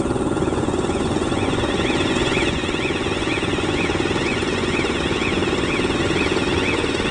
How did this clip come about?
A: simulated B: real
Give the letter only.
A